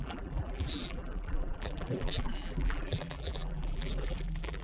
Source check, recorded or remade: remade